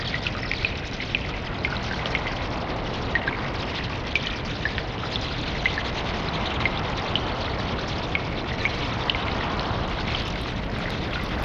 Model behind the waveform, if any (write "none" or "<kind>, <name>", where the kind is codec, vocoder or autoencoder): none